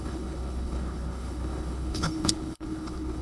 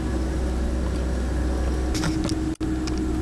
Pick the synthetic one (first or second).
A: first